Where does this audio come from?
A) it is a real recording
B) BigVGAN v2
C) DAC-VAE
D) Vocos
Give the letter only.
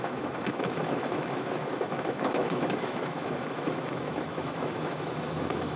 C